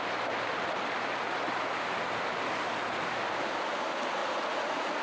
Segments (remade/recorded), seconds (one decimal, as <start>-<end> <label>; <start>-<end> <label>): 0.0-4.2 recorded; 4.2-5.0 remade